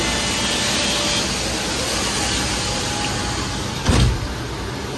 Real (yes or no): yes